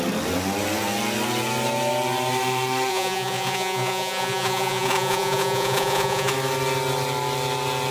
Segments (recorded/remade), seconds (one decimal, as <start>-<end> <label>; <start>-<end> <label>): 0.0-2.9 recorded; 2.9-6.3 remade; 6.3-7.9 recorded